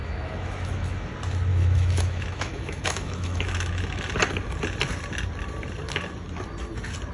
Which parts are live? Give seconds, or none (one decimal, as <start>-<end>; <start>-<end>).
1.1-1.5; 4.0-7.1